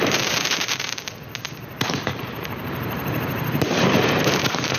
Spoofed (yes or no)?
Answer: yes